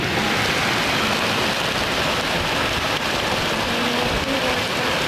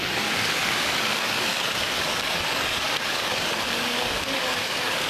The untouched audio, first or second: first